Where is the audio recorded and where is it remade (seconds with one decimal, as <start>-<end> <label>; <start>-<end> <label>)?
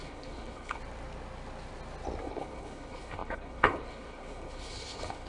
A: 0.0-0.8 remade; 0.8-2.2 recorded; 2.2-5.3 remade